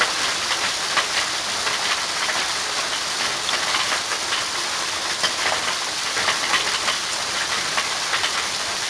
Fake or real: real